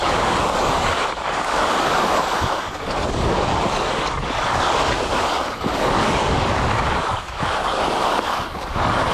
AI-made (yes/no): yes